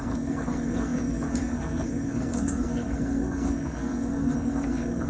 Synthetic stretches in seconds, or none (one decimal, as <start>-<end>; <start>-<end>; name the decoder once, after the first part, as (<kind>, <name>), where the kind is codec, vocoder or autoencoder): 0.0-5.1 (codec, SNAC)